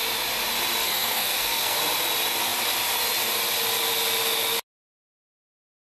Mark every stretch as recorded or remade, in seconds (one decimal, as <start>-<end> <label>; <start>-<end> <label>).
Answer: 0.0-0.8 recorded; 0.8-1.8 remade; 1.8-5.9 recorded